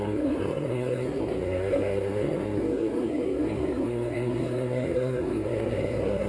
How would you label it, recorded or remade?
remade